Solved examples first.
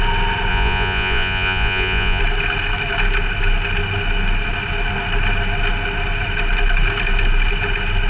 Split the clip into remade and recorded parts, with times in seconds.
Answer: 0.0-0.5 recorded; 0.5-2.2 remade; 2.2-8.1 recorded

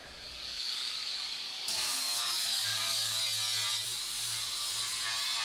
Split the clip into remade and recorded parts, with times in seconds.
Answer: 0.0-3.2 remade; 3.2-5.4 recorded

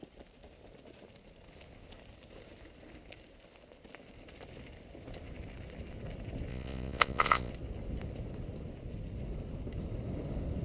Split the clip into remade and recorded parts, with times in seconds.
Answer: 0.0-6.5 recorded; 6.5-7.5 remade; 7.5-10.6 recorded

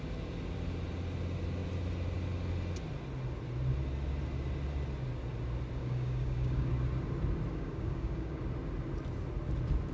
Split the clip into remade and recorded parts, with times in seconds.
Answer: 0.0-5.8 recorded; 5.8-6.7 remade; 6.7-7.5 recorded; 7.5-8.4 remade; 8.4-9.9 recorded

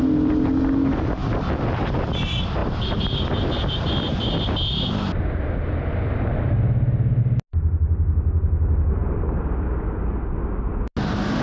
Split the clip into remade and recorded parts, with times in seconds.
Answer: 0.0-11.4 recorded

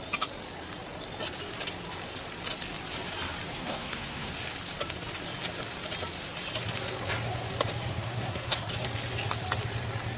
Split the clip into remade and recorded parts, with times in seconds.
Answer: 0.0-3.5 recorded; 3.5-4.3 remade; 4.3-7.9 recorded; 7.9-8.7 remade; 8.7-10.2 recorded

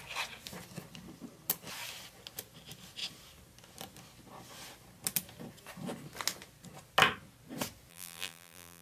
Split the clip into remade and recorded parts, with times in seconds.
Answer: 0.0-7.9 recorded; 7.9-8.8 remade

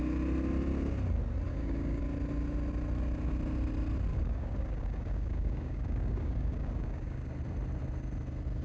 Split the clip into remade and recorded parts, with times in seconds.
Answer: 0.0-1.5 recorded; 1.5-2.0 remade; 2.0-4.1 recorded; 4.1-7.3 remade; 7.3-8.6 recorded